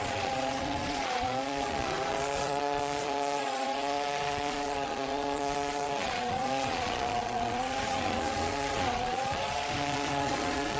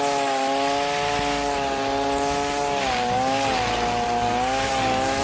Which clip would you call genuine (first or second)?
second